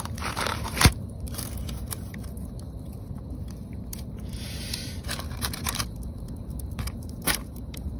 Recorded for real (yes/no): no